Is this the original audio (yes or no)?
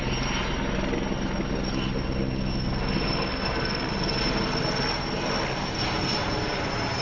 yes